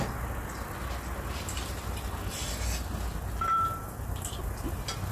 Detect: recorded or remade recorded